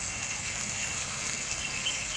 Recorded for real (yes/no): no